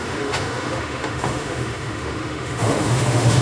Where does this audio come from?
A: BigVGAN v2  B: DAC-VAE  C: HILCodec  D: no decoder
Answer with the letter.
B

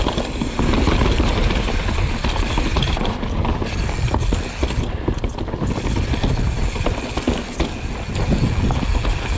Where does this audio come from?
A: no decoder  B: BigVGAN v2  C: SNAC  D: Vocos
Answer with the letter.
A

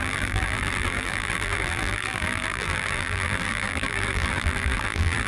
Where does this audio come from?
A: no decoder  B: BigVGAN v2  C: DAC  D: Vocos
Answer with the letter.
B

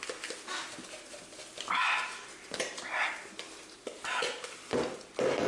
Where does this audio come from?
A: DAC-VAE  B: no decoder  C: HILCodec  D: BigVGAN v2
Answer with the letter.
B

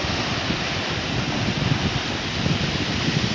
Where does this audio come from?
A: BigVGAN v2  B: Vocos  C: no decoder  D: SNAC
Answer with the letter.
C